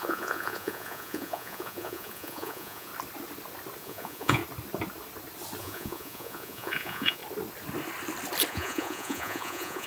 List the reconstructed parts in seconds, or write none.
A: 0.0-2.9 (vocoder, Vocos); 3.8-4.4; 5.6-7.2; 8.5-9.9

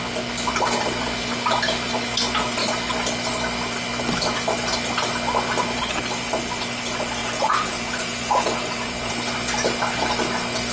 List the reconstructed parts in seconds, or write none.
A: 7.2-9.1 (vocoder, Vocos)

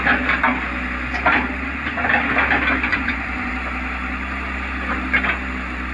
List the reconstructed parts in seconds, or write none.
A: 2.9-3.5 (vocoder, Vocos)